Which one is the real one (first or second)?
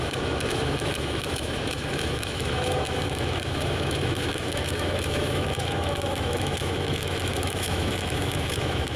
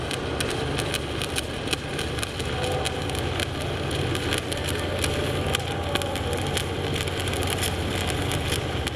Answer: second